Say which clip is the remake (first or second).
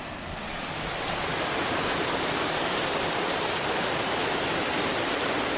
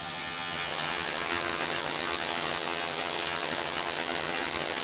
second